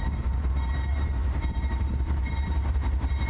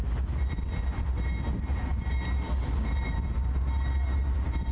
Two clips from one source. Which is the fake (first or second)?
first